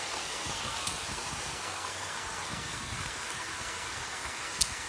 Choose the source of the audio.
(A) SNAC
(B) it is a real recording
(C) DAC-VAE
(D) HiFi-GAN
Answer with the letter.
A